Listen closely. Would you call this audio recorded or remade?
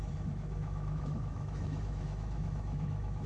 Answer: remade